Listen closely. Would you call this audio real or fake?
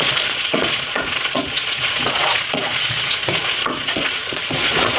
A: fake